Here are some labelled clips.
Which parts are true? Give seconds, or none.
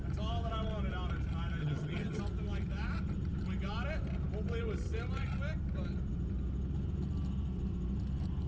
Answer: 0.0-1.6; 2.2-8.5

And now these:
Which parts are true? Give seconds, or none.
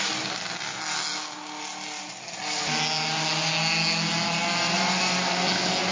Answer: 0.0-5.9